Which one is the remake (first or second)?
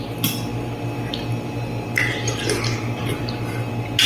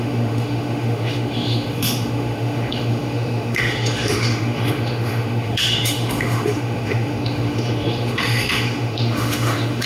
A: second